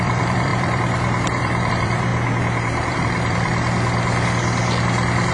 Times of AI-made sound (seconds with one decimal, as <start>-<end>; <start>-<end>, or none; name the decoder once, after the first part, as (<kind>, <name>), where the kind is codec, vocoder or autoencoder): 0.0-2.1 (vocoder, BigVGAN v2); 2.9-3.5